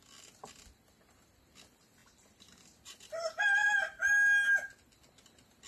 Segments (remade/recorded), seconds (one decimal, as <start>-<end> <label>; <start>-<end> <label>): 0.0-5.7 recorded